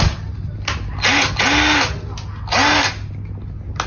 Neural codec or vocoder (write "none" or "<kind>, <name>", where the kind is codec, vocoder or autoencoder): none